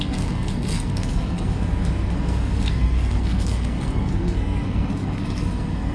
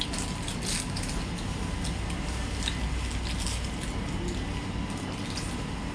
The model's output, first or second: first